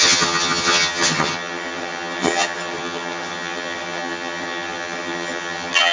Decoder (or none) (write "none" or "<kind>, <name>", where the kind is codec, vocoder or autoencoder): vocoder, HiFi-GAN